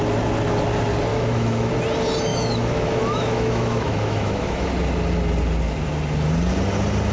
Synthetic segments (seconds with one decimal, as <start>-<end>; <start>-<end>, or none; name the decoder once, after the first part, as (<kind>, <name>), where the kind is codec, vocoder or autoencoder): 1.1-1.7 (autoencoder, DAC-VAE); 2.3-4.7